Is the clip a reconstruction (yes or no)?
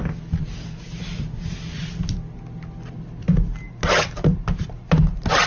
no